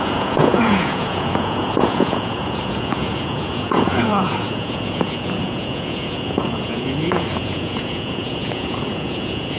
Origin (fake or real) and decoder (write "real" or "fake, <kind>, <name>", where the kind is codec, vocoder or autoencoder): fake, vocoder, Vocos